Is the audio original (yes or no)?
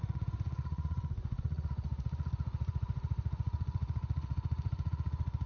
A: no